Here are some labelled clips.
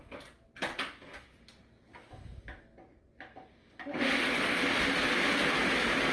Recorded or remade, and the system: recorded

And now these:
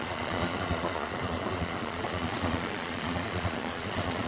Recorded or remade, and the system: remade, vocoder, Vocos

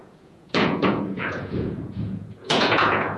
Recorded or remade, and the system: remade, vocoder, Vocos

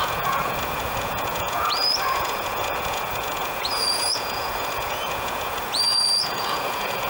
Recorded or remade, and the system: remade, vocoder, Vocos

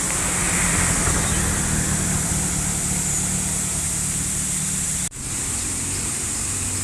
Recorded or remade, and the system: recorded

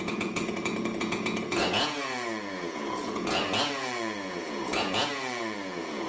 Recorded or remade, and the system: remade, vocoder, Vocos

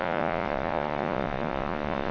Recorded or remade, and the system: remade, vocoder, Vocos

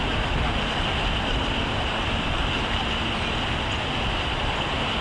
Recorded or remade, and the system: recorded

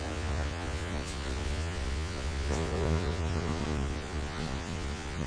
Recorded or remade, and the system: remade, vocoder, Vocos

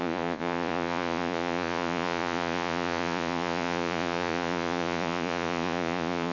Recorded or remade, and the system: remade, vocoder, Vocos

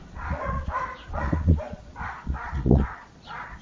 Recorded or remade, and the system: remade, vocoder, Vocos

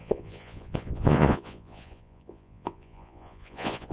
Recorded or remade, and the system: remade, vocoder, Vocos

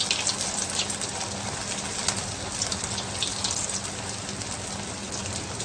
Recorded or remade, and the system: recorded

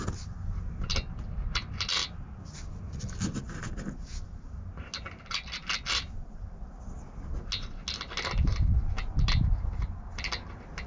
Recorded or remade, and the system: recorded